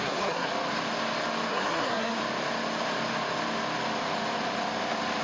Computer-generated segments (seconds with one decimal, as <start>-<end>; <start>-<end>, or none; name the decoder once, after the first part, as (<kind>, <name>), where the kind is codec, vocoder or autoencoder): 0.0-0.5 (codec, SNAC); 1.5-2.2